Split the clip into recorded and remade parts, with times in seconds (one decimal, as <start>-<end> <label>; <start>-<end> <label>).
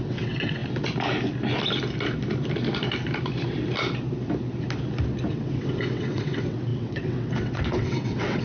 0.0-0.6 remade; 0.6-5.3 recorded; 5.3-8.4 remade